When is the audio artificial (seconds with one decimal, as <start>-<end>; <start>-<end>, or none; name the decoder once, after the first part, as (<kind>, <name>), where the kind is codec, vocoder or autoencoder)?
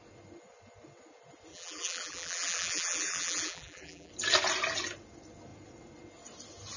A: 1.5-4.1 (vocoder, BigVGAN v2)